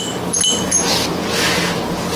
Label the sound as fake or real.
real